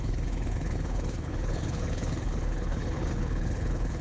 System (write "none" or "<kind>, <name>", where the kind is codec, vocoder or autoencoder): codec, HILCodec